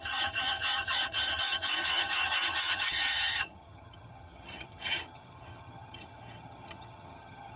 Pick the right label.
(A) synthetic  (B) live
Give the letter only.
A